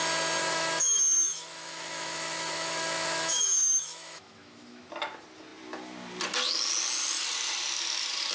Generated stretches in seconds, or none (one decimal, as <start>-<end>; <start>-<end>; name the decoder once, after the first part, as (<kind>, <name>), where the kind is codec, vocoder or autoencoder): 0.4-4.9 (autoencoder, DAC-VAE)

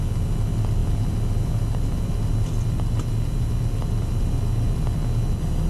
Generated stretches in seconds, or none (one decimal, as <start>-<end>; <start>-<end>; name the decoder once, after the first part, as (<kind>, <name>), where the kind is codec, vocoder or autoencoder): none

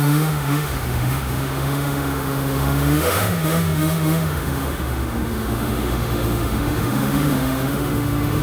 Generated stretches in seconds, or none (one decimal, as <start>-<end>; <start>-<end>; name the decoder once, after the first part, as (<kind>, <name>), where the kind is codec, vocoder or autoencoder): 0.0-8.4 (autoencoder, DAC-VAE)